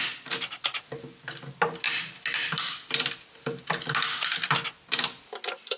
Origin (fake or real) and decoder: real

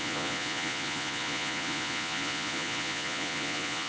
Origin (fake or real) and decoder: fake, vocoder, Vocos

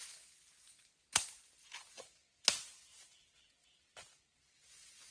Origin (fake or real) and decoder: real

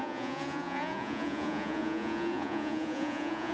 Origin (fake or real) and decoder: fake, vocoder, Vocos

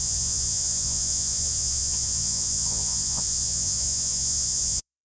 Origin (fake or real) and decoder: fake, vocoder, Vocos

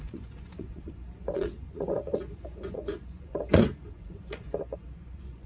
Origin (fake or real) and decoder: fake, vocoder, Vocos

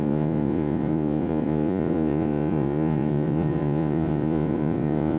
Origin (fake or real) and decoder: fake, vocoder, Vocos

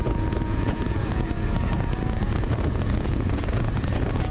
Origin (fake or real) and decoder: fake, vocoder, Vocos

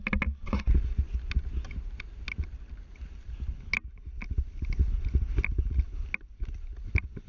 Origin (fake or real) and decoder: real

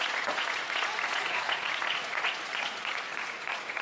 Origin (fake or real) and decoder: fake, vocoder, Vocos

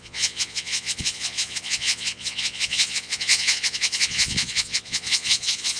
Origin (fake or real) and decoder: fake, vocoder, Vocos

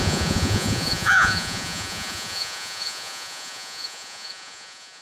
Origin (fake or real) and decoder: fake, vocoder, Vocos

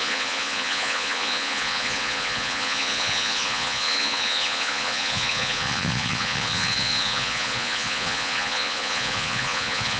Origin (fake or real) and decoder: fake, vocoder, Vocos